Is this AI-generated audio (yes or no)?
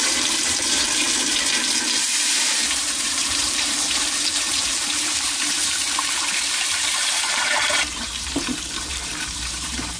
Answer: yes